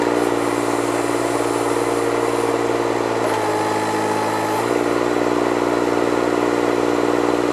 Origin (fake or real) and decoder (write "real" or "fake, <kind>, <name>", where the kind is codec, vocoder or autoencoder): real